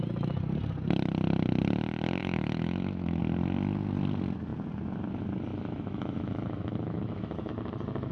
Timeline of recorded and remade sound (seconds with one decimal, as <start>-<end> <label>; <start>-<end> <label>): 0.0-2.2 recorded; 2.2-3.2 remade; 3.2-5.5 recorded; 5.5-7.5 remade; 7.5-8.1 recorded